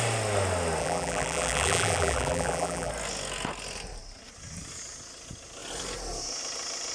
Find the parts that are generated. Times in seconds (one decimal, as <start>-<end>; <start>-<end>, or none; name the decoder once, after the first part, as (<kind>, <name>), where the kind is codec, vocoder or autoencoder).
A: 0.8-2.9 (vocoder, BigVGAN v2)